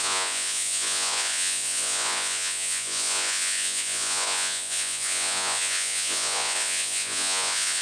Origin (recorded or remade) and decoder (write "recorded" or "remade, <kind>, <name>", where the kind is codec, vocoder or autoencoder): remade, vocoder, Vocos